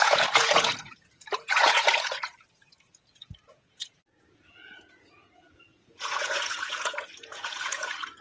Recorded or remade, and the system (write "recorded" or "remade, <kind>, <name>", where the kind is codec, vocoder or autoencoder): remade, vocoder, Vocos